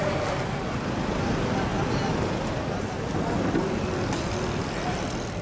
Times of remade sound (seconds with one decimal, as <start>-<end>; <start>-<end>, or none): none